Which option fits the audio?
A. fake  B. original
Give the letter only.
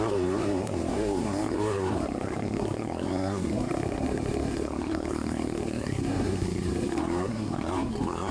A